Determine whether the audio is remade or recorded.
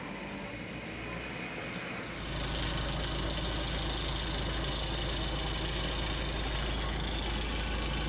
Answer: recorded